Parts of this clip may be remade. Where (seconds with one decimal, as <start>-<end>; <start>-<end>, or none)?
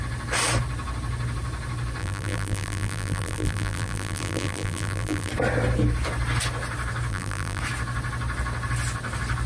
2.0-5.3; 7.1-7.6